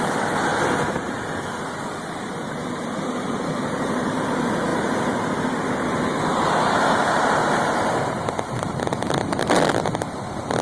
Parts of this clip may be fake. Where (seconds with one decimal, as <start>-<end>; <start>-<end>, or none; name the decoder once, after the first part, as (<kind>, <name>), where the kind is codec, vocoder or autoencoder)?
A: 2.4-4.1 (vocoder, BigVGAN v2); 7.4-8.8